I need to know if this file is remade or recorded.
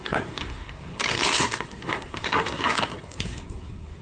remade